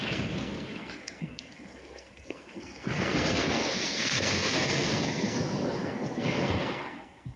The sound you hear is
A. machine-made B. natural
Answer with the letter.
A